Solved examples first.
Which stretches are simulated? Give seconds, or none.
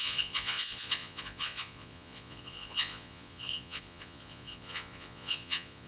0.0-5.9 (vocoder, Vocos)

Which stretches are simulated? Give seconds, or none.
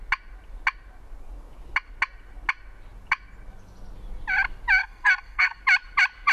4.8-5.6 (codec, SNAC)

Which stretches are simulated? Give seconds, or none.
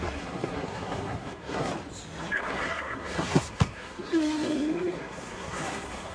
0.0-1.7 (codec, SNAC); 2.2-6.1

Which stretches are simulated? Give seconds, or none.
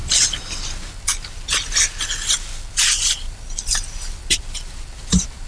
none